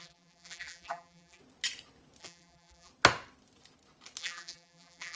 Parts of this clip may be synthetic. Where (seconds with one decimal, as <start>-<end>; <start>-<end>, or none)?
0.0-1.4; 2.2-2.9; 4.2-5.2